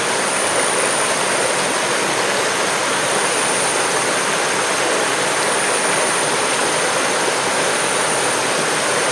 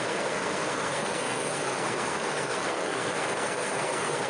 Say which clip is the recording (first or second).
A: first